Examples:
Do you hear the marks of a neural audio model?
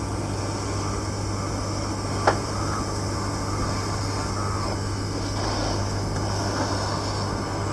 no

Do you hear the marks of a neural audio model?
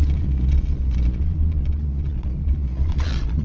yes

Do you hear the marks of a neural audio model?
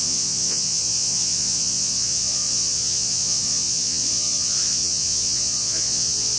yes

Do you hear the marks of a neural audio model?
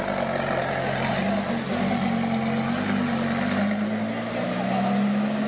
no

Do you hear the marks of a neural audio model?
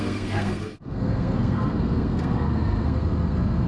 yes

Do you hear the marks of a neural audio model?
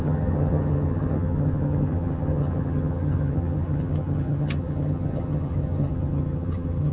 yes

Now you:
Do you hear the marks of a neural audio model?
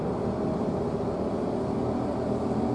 no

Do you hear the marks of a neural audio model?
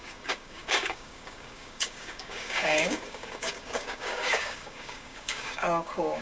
yes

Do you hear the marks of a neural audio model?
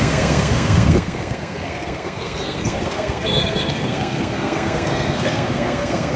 yes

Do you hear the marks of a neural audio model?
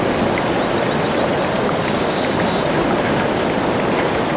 no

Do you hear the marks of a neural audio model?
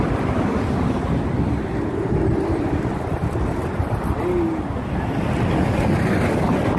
no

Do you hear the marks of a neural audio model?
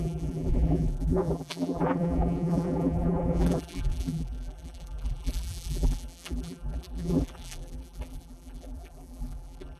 yes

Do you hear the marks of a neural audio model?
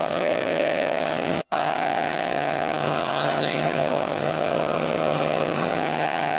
yes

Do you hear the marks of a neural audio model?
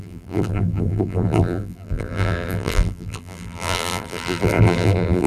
yes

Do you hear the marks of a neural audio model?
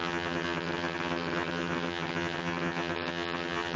yes